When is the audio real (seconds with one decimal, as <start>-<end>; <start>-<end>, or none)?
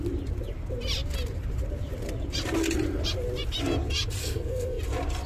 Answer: 0.0-4.2; 4.8-5.3